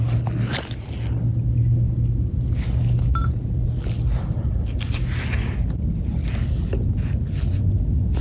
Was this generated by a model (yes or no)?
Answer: no